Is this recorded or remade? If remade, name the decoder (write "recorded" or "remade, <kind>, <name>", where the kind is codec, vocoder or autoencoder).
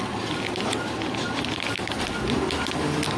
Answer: recorded